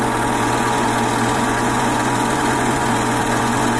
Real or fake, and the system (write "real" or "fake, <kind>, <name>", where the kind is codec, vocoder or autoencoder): fake, vocoder, Vocos